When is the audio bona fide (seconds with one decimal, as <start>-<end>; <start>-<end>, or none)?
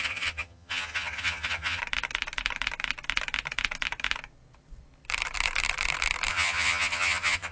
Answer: 1.8-6.3